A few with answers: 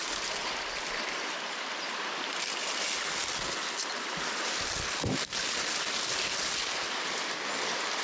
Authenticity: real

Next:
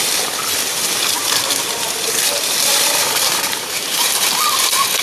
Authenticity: real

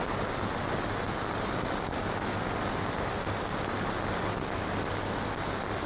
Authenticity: real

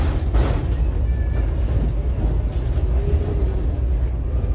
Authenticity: real